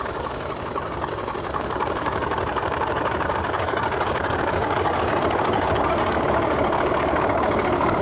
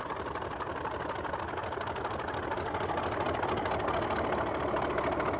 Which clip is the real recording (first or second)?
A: second